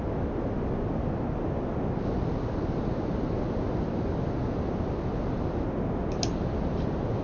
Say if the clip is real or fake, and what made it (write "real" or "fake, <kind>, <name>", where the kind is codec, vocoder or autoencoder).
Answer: real